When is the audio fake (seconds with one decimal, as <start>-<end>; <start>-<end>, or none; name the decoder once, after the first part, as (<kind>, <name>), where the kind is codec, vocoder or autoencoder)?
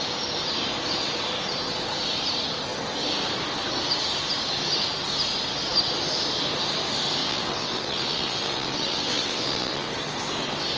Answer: 7.2-9.9 (vocoder, WaveNeXt)